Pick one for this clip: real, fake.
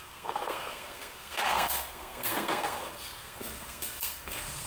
fake